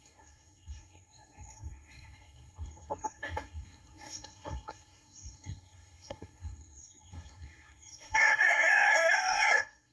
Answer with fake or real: fake